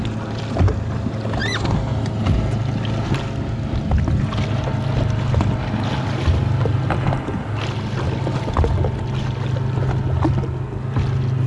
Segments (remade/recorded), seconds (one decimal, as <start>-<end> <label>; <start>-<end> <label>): 0.0-11.5 recorded